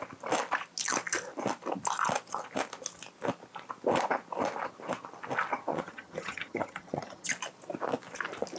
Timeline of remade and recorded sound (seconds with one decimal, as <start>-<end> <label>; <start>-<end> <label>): 0.0-5.7 recorded; 5.7-7.3 remade; 7.3-8.6 recorded